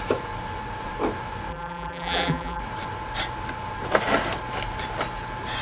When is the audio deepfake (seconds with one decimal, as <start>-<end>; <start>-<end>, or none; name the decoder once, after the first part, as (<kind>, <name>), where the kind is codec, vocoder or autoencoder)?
1.5-2.6 (vocoder, BigVGAN v2)